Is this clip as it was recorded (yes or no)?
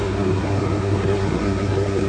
no